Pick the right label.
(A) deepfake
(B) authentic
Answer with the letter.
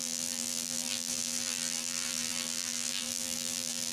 A